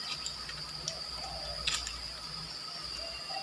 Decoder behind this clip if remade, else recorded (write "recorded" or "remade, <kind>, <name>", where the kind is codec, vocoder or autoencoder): recorded